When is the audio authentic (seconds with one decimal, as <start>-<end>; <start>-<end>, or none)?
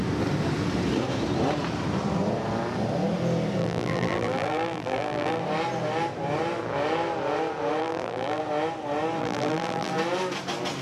0.0-3.6; 5.4-7.8; 8.4-9.2; 9.9-10.8